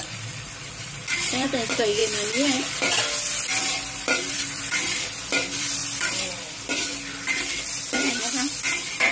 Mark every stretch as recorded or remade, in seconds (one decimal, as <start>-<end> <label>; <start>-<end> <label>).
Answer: 0.0-2.0 remade; 2.0-3.5 recorded; 3.5-9.1 remade